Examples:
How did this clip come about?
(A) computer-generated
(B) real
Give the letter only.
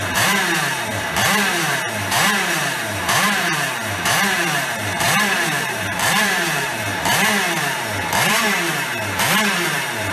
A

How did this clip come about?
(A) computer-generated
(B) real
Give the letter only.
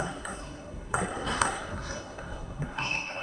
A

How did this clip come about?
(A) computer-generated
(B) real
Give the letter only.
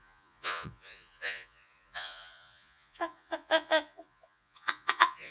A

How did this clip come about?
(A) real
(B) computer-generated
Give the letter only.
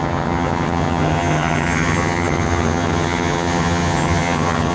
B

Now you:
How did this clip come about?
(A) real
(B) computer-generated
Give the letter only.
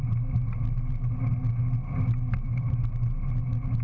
A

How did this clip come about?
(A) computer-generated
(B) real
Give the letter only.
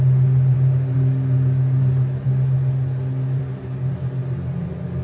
B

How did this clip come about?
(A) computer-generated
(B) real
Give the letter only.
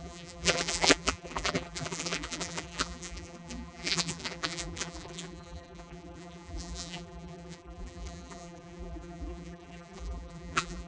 A